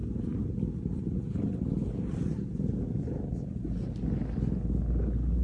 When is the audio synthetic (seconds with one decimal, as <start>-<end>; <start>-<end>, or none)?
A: none